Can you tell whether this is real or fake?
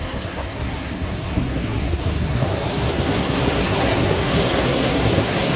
fake